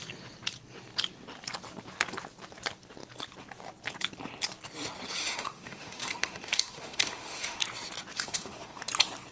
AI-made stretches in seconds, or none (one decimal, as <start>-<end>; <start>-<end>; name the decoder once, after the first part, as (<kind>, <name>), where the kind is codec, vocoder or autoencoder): 5.2-7.6 (autoencoder, DAC-VAE); 8.1-8.8